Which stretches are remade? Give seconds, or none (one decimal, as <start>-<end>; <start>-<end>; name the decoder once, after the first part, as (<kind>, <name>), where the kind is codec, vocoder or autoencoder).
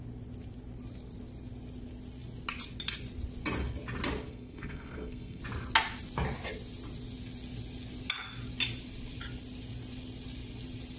4.3-5.4 (codec, SNAC)